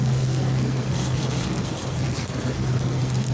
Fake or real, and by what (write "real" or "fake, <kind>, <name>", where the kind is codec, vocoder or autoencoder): fake, codec, SNAC